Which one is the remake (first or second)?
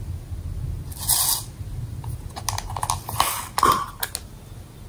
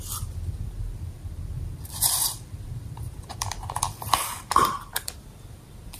second